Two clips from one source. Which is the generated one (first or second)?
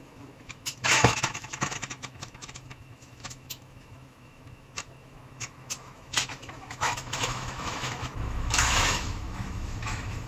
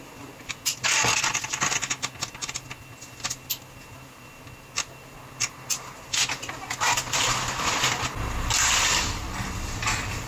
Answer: first